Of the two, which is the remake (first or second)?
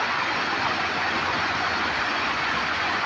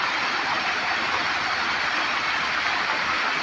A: first